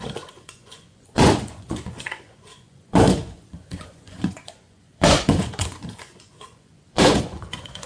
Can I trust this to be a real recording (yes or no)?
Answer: no